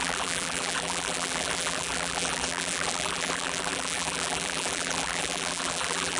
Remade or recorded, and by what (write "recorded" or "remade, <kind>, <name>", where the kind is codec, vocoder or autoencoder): remade, vocoder, BigVGAN v2